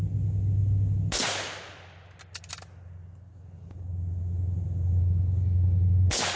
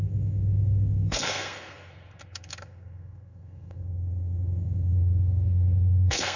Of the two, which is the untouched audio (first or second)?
first